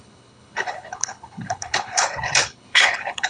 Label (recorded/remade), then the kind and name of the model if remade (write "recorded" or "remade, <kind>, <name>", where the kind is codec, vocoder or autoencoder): remade, codec, HILCodec